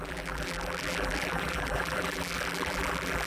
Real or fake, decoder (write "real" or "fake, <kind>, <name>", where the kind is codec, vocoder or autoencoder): fake, vocoder, BigVGAN v2